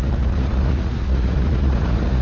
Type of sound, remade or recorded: remade